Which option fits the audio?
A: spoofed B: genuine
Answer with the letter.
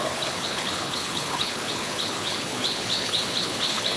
A